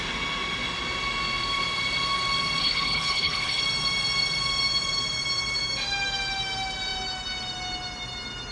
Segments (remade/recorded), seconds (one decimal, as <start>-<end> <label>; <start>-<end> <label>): 0.0-2.6 recorded; 2.6-3.6 remade; 3.6-8.5 recorded